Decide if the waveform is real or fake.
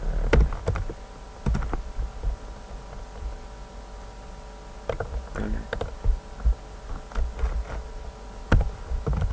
real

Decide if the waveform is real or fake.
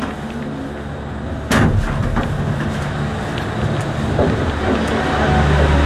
real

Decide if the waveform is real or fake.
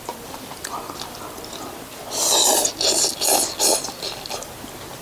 real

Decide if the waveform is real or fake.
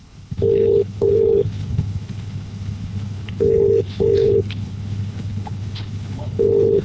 fake